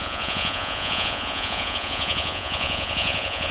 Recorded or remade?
remade